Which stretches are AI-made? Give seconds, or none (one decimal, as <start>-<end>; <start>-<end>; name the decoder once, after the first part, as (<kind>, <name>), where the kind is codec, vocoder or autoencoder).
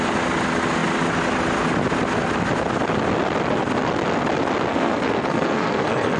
4.7-6.2 (codec, SNAC)